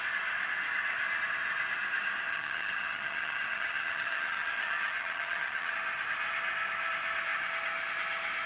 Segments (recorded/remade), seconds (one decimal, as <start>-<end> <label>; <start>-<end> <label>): 0.0-2.3 recorded; 2.3-5.7 remade; 5.7-8.5 recorded